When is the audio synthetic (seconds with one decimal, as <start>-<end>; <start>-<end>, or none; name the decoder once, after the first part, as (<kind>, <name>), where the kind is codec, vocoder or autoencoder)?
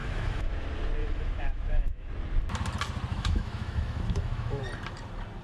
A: 0.0-0.5 (autoencoder, DAC-VAE); 1.0-2.1; 3.1-4.6